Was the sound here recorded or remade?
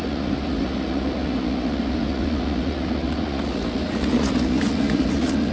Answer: remade